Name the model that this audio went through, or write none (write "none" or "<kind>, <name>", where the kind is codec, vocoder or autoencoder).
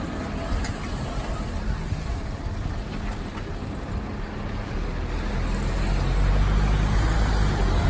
none